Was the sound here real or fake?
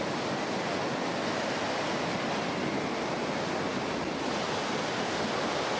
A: real